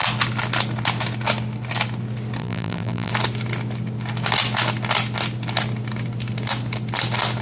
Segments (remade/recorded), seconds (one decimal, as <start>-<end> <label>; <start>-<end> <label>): 0.0-2.4 recorded; 2.4-3.1 remade; 3.1-7.4 recorded